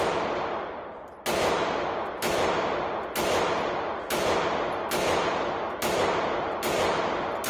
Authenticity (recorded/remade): recorded